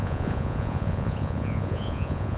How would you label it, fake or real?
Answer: fake